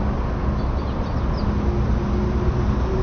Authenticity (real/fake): real